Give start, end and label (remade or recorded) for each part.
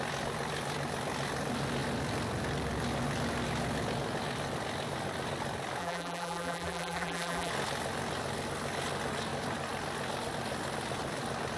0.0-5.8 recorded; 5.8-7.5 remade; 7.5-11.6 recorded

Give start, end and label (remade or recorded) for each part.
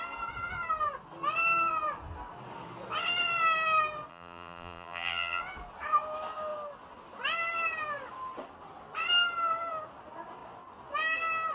0.0-4.1 recorded; 4.1-5.4 remade; 5.4-11.5 recorded